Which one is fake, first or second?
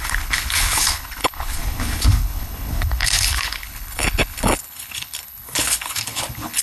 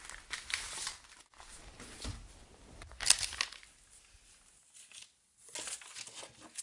first